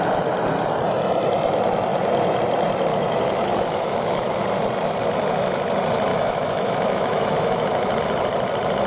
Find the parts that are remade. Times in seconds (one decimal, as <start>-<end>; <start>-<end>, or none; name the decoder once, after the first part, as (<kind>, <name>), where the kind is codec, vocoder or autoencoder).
2.9-4.4 (autoencoder, DAC-VAE); 6.1-8.0